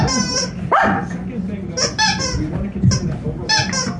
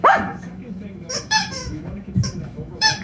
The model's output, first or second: second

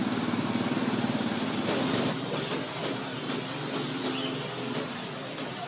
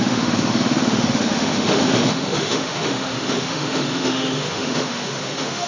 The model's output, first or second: second